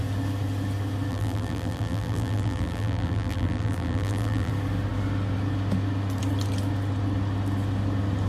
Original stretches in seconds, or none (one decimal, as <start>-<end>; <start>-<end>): 0.0-1.1; 4.5-8.3